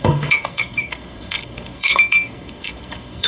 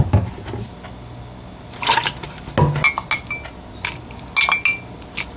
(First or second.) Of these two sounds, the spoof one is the first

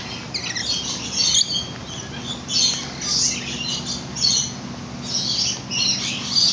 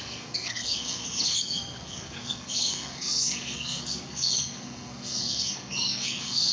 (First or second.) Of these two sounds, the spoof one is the second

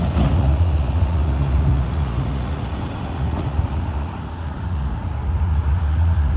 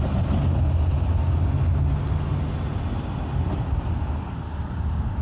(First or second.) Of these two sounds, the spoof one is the first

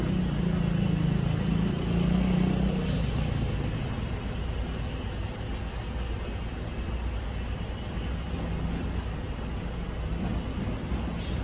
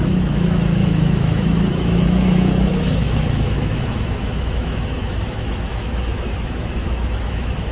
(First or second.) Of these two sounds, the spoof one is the second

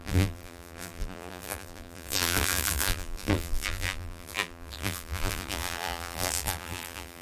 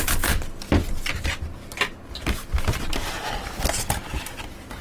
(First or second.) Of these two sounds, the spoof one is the first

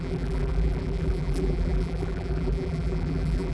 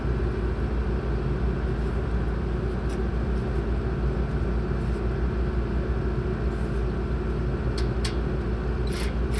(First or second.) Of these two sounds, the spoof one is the first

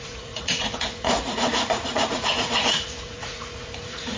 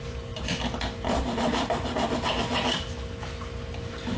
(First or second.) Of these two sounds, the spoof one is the first